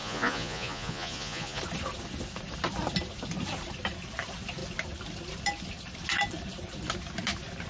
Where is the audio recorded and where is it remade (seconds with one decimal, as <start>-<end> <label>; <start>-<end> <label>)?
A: 0.0-1.6 remade; 1.6-7.7 recorded